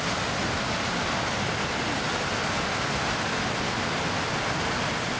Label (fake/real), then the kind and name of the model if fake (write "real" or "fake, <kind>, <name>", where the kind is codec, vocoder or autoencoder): real